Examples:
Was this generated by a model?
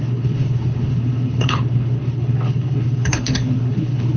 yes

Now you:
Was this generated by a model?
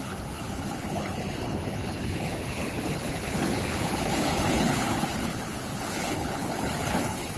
yes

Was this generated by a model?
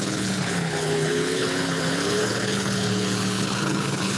yes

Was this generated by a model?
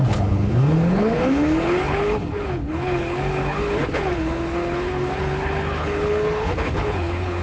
yes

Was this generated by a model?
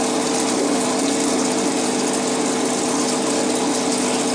no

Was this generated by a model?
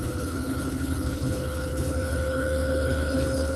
yes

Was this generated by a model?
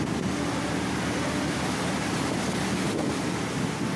no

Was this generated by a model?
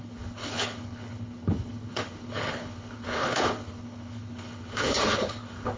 yes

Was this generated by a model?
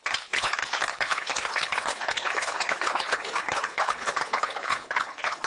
yes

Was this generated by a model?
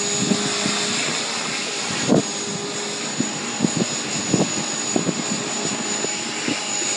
no